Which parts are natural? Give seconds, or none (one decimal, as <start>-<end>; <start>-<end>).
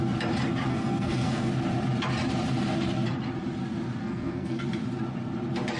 0.0-0.7; 1.5-4.0; 4.6-5.8